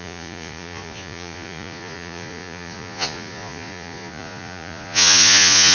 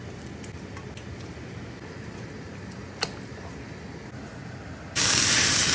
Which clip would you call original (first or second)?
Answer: second